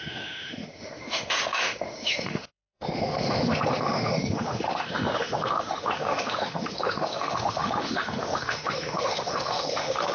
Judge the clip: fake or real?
fake